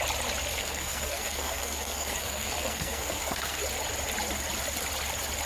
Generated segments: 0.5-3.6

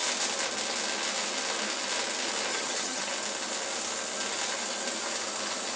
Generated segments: 2.5-3.1

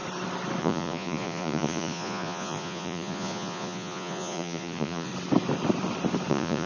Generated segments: 0.6-5.1; 6.3-6.7

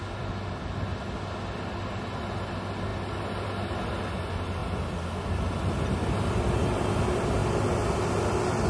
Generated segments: none

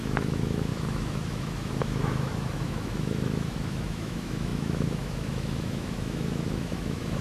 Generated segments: 0.0-7.2

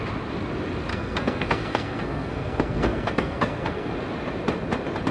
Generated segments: 0.9-3.9